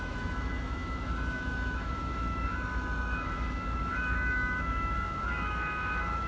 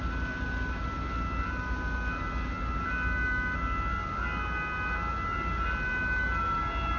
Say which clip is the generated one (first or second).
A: first